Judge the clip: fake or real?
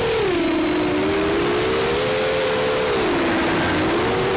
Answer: real